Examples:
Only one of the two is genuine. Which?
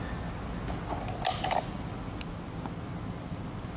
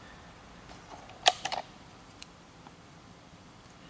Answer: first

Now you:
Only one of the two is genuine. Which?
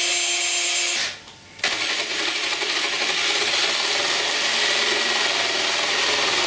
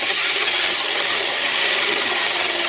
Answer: first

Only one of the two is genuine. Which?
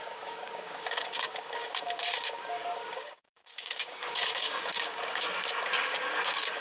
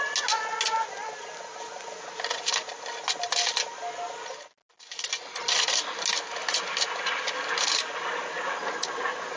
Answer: second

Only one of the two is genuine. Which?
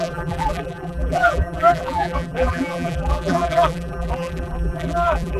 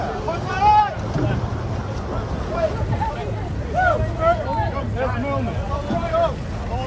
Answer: second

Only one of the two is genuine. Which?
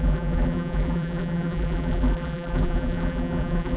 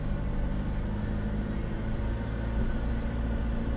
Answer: second